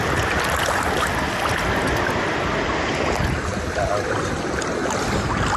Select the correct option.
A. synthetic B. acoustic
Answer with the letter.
B